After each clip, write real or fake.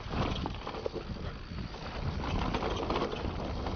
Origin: real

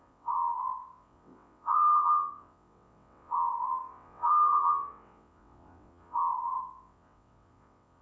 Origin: fake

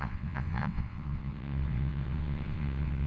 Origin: fake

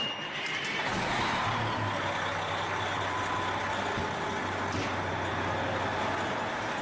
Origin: real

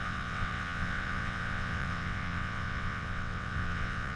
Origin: fake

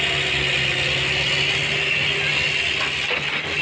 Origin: real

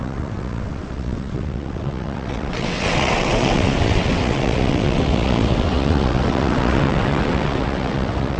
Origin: fake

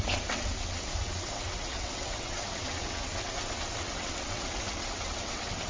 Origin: fake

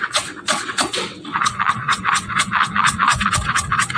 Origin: fake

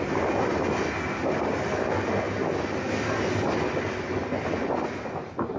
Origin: real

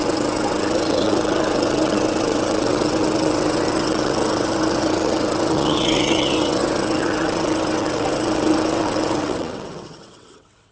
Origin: fake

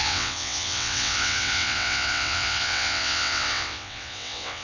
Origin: fake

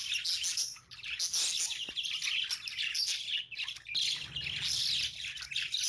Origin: real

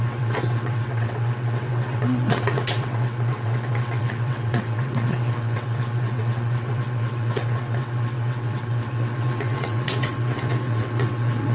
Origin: fake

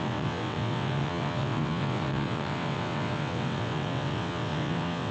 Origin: fake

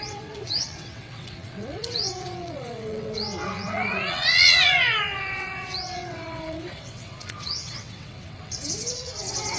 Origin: fake